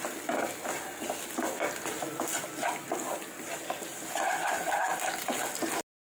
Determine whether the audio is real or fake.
real